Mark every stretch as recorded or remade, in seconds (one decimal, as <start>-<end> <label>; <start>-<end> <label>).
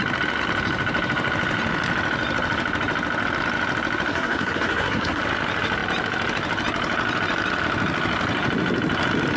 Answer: 0.0-4.1 recorded; 4.1-5.2 remade; 5.2-9.4 recorded